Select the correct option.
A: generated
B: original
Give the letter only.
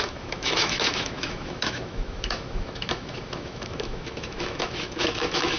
A